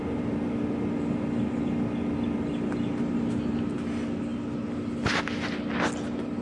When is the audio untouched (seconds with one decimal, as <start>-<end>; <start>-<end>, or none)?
0.0-6.4